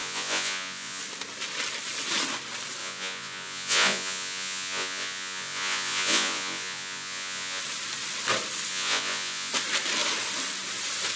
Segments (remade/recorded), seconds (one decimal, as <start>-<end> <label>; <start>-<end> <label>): 0.0-1.0 remade; 1.0-2.8 recorded; 2.8-7.6 remade; 7.6-8.7 recorded; 8.7-9.5 remade; 9.5-11.2 recorded